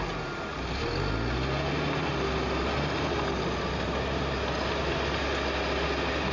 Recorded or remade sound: recorded